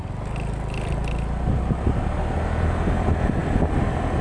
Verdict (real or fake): real